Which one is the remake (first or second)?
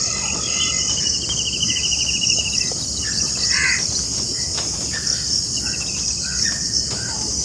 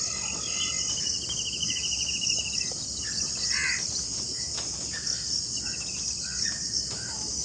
first